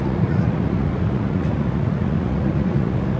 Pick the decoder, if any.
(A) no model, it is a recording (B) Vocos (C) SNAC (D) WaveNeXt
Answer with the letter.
B